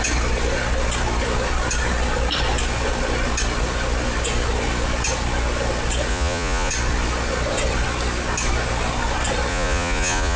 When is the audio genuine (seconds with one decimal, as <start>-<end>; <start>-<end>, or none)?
0.0-6.1; 6.7-9.5